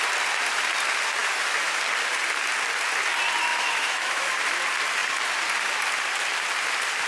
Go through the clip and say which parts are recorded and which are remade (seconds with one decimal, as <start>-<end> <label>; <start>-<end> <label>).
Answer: 0.0-1.2 recorded; 1.2-1.8 remade; 1.8-3.5 recorded; 3.5-4.3 remade; 4.3-7.1 recorded